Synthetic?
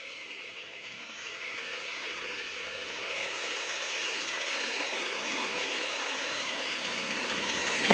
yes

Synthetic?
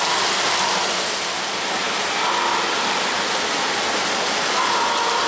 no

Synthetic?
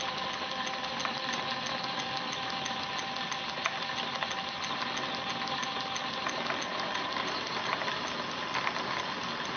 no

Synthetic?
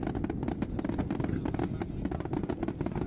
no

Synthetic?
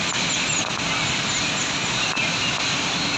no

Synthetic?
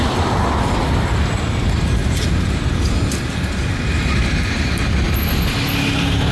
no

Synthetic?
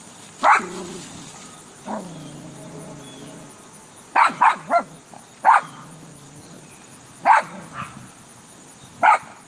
no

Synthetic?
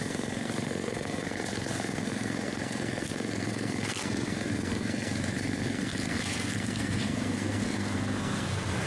yes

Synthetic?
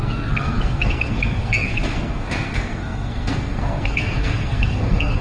yes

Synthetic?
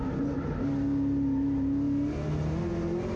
no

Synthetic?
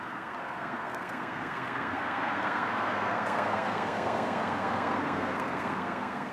yes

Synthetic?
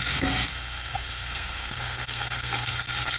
yes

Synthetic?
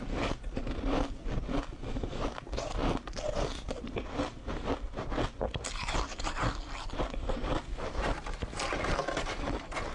no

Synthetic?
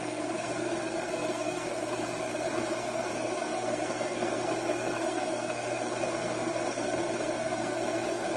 yes